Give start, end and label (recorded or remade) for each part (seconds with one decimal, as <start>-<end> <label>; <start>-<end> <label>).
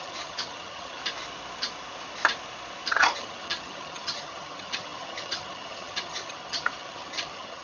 0.0-1.0 remade; 1.0-2.9 recorded; 2.9-7.6 remade